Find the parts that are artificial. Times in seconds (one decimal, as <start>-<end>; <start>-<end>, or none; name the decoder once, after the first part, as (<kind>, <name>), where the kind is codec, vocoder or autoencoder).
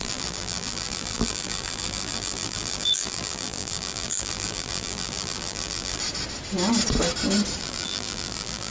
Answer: 0.0-6.0 (vocoder, BigVGAN v2); 7.6-8.7